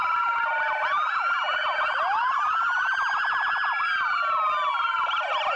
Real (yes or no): yes